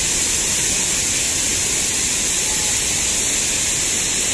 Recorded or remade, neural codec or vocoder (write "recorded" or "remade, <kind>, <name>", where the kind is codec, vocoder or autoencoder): recorded